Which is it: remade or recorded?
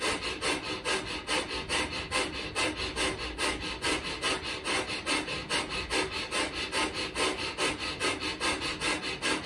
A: recorded